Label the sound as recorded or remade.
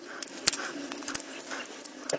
recorded